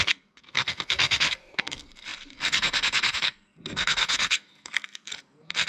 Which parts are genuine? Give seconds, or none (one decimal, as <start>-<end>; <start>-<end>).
none